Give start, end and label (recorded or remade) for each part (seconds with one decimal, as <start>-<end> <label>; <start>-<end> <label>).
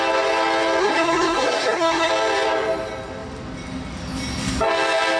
0.0-0.8 recorded; 0.8-2.1 remade; 2.1-5.2 recorded